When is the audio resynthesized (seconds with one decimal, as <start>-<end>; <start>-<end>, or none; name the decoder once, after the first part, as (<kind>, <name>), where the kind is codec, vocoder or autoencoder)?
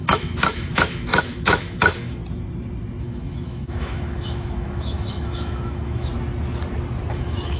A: 0.0-2.2 (autoencoder, DAC-VAE); 3.0-6.1; 7.1-7.6